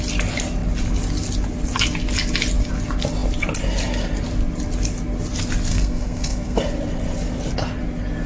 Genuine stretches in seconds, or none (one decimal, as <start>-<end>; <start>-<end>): 0.0-5.7; 6.6-8.3